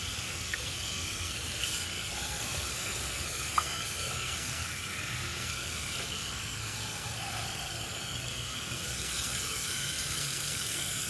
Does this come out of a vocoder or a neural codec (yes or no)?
yes